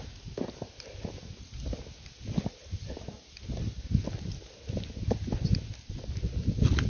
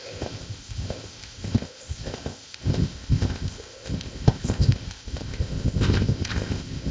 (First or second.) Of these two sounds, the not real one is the second